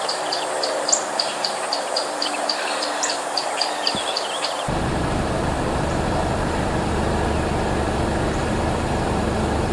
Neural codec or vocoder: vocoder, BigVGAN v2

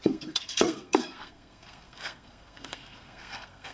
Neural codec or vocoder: codec, SNAC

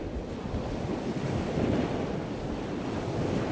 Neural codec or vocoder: none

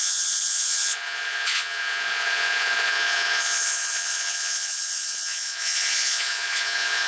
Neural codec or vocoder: vocoder, Vocos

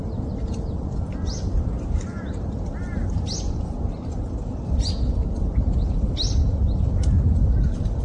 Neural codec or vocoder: none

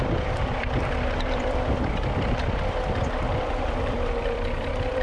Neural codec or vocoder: vocoder, BigVGAN v2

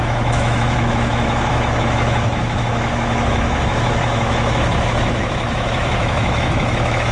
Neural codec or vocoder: autoencoder, DAC-VAE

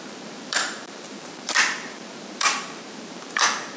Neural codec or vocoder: vocoder, BigVGAN v2